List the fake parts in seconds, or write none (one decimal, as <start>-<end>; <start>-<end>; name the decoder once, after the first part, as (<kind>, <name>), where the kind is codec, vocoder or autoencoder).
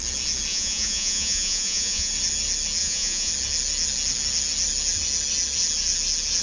0.5-2.1 (vocoder, Vocos); 2.8-3.3